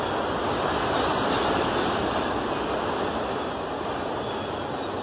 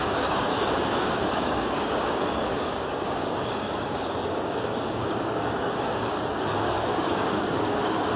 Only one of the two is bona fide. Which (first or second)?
first